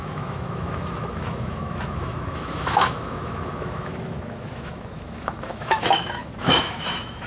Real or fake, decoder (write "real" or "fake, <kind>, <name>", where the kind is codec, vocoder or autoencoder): fake, autoencoder, DAC-VAE